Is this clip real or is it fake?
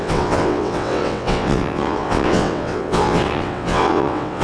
fake